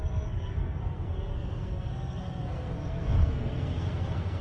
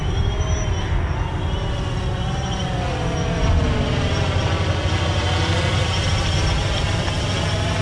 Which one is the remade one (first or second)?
first